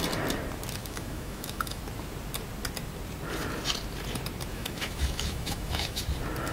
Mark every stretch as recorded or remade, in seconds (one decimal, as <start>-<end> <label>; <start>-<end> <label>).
0.0-0.8 recorded; 0.8-1.8 remade; 1.8-4.5 recorded; 4.5-6.0 remade; 6.0-6.5 recorded

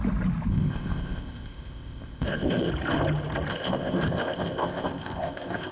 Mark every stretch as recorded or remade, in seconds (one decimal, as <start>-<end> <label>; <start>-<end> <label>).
0.0-0.5 recorded; 0.5-2.7 remade; 2.7-3.5 recorded; 3.5-5.7 remade

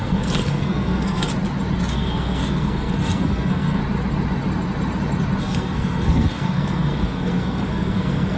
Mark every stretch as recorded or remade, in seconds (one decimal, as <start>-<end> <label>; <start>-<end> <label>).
0.0-1.3 remade; 1.3-1.9 recorded; 1.9-3.8 remade; 3.8-5.4 recorded; 5.4-8.4 remade